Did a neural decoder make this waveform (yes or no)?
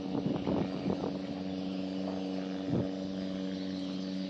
no